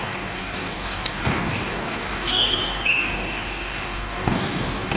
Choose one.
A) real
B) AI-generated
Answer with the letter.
B